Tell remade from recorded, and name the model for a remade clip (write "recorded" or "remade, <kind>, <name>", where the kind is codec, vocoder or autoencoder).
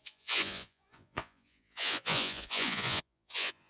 remade, vocoder, Vocos